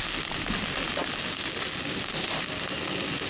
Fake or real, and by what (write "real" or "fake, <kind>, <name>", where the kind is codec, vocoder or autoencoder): real